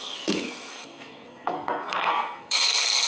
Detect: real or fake fake